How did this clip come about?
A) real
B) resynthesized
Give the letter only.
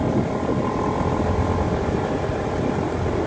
A